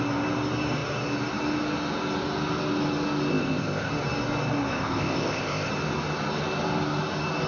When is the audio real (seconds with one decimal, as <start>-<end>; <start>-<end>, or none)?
0.0-3.3; 3.9-4.7; 5.7-7.5